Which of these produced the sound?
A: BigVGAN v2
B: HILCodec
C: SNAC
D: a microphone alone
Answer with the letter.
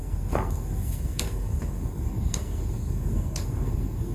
C